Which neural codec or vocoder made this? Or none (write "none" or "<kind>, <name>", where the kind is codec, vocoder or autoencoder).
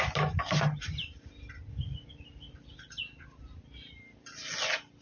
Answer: none